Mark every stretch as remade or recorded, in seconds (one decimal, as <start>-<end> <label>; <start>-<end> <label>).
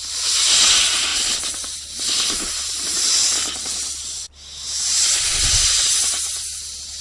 0.0-7.0 recorded